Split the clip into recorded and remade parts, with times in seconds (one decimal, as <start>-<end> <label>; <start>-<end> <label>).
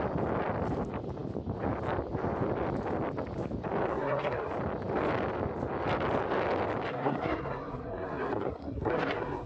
0.0-3.9 recorded; 3.9-4.5 remade; 4.5-6.9 recorded; 6.9-9.5 remade